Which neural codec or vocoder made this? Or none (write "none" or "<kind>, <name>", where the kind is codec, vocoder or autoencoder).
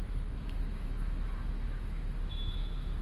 autoencoder, DAC-VAE